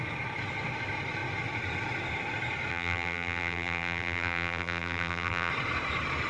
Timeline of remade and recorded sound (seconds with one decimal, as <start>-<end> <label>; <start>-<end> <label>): 0.0-2.7 recorded; 2.7-5.5 remade; 5.5-6.3 recorded